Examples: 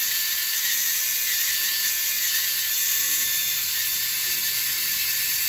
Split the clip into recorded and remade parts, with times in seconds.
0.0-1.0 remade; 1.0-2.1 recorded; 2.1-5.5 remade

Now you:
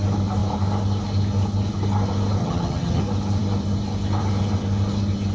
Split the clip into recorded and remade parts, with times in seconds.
0.0-2.4 recorded; 2.4-3.0 remade; 3.0-5.3 recorded

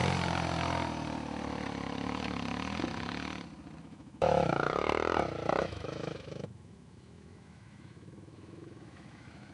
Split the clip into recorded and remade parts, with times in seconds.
0.0-3.8 recorded; 3.8-4.9 remade; 4.9-5.6 recorded; 5.6-9.5 remade